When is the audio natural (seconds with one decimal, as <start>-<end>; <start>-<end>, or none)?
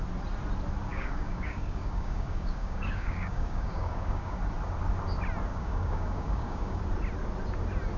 0.0-0.9; 4.4-5.5; 6.8-8.0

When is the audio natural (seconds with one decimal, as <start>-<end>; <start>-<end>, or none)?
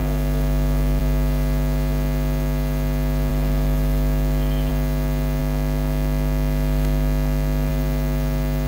1.0-3.3; 4.7-5.4; 7.7-8.7